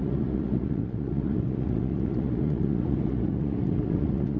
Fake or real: fake